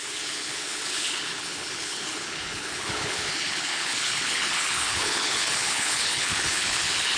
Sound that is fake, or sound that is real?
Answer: fake